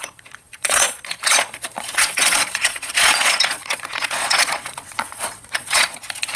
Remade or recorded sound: remade